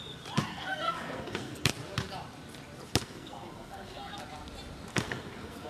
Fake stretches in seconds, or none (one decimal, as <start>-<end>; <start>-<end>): 0.5-1.7; 3.0-4.2; 4.9-5.7